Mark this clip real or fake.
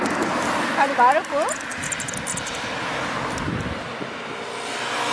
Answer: real